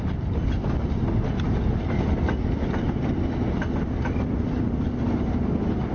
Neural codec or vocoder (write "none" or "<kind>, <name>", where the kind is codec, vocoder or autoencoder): none